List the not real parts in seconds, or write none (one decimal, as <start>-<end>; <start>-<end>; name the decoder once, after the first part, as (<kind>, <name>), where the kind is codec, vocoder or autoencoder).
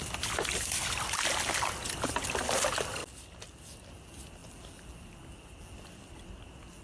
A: none